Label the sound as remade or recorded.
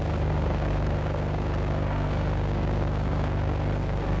remade